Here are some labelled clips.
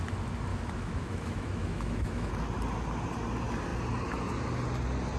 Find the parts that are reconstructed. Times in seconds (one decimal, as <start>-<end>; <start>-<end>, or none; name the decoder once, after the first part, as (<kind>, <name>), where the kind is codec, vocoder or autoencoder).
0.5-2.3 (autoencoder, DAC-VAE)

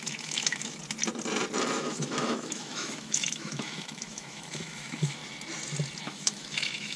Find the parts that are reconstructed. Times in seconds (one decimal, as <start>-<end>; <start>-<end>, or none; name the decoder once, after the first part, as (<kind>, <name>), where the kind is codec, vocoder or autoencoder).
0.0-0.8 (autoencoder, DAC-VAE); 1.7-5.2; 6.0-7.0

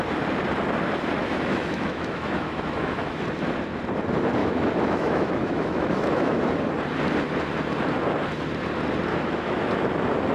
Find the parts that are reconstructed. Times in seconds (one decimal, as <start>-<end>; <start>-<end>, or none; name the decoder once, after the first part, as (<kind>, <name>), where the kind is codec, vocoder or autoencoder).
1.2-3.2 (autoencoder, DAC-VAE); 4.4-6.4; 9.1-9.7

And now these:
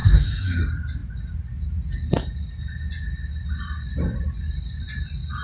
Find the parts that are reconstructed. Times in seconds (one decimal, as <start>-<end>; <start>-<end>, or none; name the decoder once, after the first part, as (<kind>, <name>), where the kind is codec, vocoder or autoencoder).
0.0-0.6 (autoencoder, DAC-VAE)